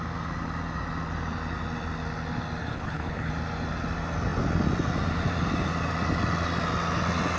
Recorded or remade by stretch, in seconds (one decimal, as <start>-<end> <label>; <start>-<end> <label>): 0.0-2.6 recorded; 2.6-3.3 remade; 3.3-7.4 recorded